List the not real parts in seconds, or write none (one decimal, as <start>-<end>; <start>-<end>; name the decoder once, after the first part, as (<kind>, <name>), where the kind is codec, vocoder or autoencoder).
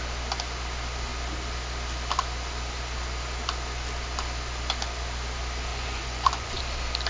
5.7-6.6 (vocoder, Vocos)